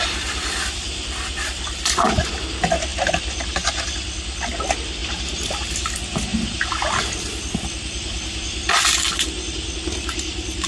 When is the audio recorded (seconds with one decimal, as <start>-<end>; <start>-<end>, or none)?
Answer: 0.0-10.7